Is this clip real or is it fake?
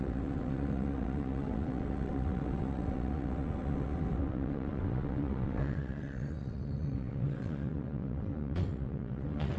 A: fake